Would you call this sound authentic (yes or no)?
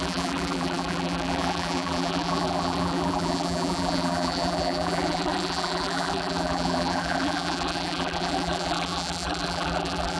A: no